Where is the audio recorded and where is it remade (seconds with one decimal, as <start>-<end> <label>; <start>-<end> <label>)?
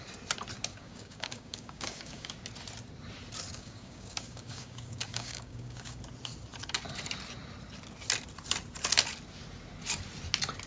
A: 0.0-0.7 recorded; 0.7-2.3 remade; 2.3-3.5 recorded; 3.5-6.0 remade; 6.0-10.7 recorded